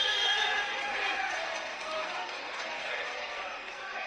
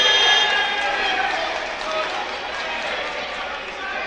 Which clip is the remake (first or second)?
first